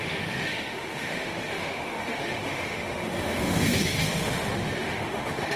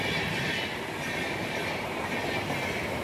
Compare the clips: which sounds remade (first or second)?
first